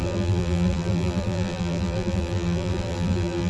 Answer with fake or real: fake